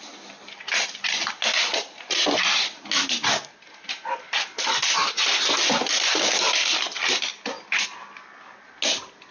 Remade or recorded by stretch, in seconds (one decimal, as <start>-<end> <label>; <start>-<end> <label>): 0.0-9.3 recorded